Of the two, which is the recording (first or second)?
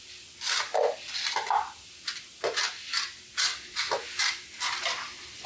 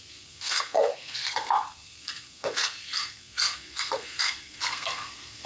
first